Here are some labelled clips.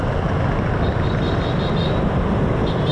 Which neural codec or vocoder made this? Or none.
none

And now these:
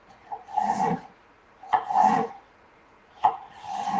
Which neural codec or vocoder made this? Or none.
vocoder, Vocos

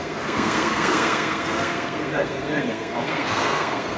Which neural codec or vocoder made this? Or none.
codec, SNAC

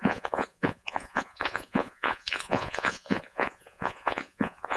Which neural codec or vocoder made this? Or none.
vocoder, Vocos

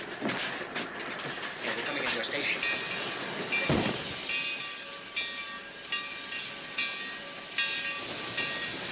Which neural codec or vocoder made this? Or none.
none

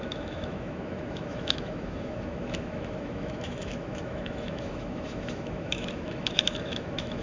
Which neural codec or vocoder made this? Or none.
autoencoder, DAC-VAE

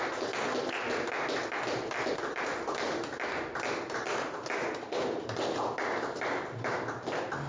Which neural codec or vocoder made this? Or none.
none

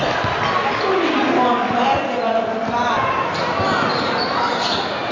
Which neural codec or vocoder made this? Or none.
none